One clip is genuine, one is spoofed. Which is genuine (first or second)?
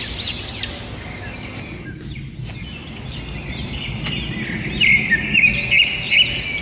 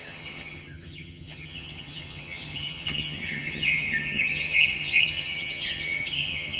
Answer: first